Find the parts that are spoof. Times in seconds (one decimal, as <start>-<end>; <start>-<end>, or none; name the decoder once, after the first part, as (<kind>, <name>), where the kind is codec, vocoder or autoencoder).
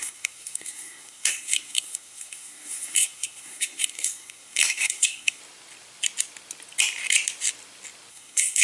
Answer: 0.0-5.4 (codec, SNAC); 8.1-8.6